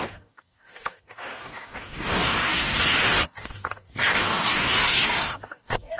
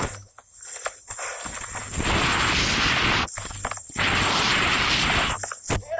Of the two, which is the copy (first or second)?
first